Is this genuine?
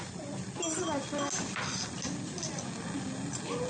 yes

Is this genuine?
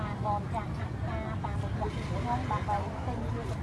yes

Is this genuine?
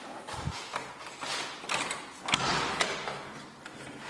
yes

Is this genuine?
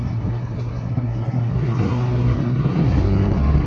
no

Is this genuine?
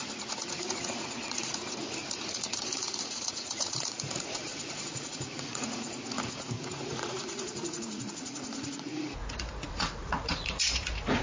no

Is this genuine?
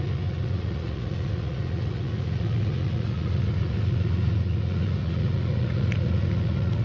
no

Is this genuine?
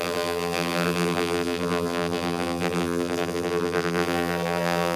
no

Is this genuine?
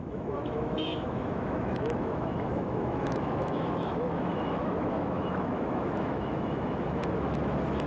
no